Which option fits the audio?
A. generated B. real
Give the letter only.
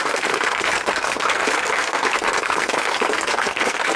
A